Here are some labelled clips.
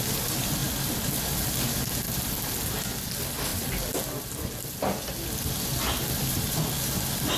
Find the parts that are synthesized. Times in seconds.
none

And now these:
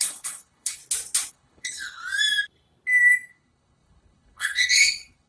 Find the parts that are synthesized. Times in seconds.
0.0-0.8 (codec, HILCodec); 1.3-2.0; 3.3-5.3

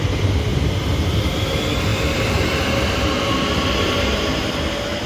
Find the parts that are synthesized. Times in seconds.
0.5-1.1 (vocoder, BigVGAN v2); 1.9-4.5

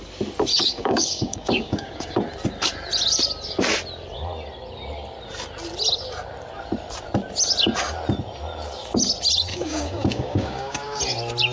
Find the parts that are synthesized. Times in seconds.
0.5-2.2 (codec, DAC); 9.5-11.0

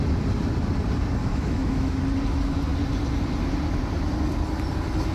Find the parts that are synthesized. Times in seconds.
1.2-2.0 (autoencoder, DAC-VAE)

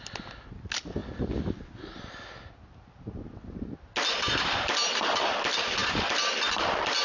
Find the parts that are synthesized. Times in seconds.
5.8-6.4 (vocoder, BigVGAN v2)